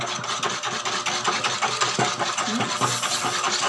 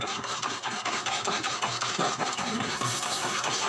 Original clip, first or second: first